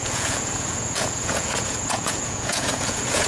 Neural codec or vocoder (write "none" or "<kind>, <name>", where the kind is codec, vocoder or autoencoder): vocoder, Vocos